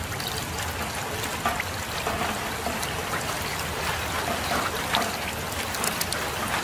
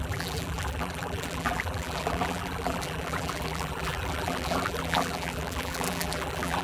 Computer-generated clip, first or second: second